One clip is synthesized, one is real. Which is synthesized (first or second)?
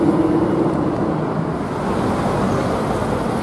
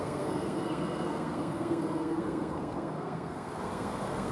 second